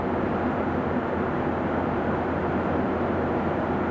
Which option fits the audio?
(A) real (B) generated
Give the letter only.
A